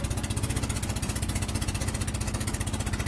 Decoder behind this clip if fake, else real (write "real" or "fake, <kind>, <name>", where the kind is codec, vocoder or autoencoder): real